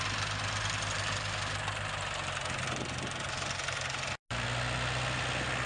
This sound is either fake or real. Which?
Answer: real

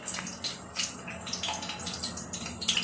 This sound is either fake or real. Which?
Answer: real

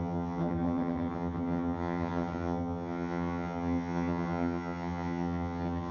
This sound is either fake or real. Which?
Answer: fake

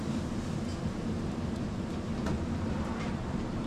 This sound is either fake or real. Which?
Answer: real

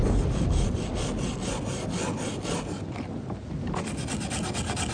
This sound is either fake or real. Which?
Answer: real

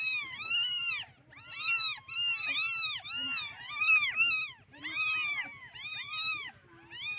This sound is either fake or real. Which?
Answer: real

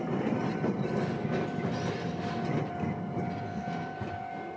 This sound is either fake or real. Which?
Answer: real